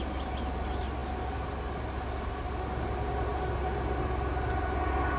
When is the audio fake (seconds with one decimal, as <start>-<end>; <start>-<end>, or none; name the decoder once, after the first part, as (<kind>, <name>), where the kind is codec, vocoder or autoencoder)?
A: none